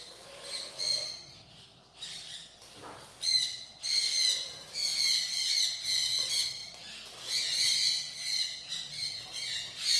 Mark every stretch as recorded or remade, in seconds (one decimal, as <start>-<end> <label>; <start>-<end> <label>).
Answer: 0.0-6.6 recorded; 6.6-7.4 remade; 7.4-10.0 recorded